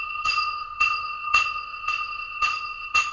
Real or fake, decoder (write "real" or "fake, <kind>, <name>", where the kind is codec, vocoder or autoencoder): fake, codec, ZipCodec